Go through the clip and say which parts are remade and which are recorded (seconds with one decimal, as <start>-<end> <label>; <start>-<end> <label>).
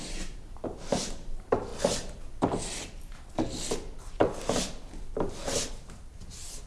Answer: 0.0-1.7 remade; 1.7-5.7 recorded; 5.7-6.7 remade